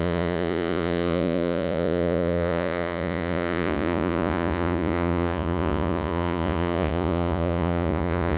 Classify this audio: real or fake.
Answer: fake